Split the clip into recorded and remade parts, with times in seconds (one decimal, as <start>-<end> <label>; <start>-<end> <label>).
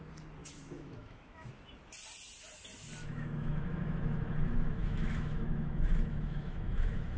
0.0-0.4 recorded; 0.4-1.5 remade; 1.5-3.0 recorded; 3.0-7.2 remade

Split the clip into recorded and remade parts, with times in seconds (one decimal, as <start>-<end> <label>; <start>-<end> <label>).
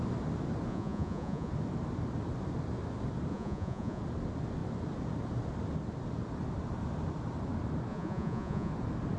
0.0-0.7 recorded; 0.7-1.5 remade; 1.5-3.3 recorded; 3.3-4.0 remade; 4.0-7.9 recorded; 7.9-8.7 remade; 8.7-9.2 recorded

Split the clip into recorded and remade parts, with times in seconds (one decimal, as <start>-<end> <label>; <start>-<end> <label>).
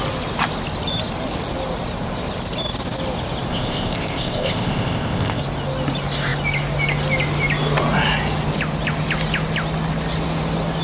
0.0-3.5 recorded; 3.5-5.4 remade; 5.4-10.8 recorded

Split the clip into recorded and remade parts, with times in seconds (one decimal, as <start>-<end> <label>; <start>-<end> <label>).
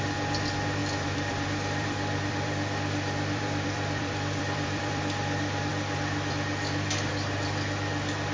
0.0-0.8 recorded; 0.8-5.0 remade; 5.0-8.3 recorded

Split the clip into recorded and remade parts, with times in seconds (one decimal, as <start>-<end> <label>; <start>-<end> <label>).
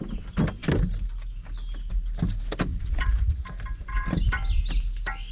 0.0-2.7 recorded; 2.7-3.4 remade; 3.4-5.3 recorded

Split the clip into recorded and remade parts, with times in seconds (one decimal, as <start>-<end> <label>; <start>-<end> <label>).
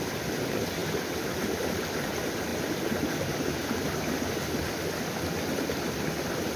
0.0-6.6 recorded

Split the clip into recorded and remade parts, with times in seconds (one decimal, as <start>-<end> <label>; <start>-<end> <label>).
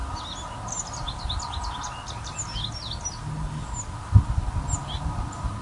0.0-5.6 recorded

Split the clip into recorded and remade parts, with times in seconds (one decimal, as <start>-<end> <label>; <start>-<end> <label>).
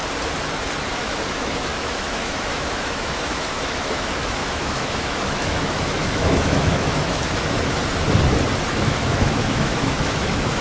0.0-0.9 recorded; 0.9-7.8 remade; 7.8-8.8 recorded; 8.8-10.6 remade